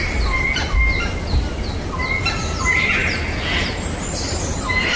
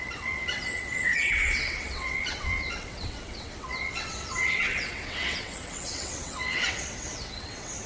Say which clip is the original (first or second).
first